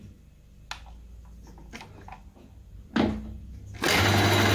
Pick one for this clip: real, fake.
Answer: real